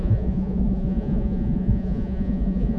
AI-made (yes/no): yes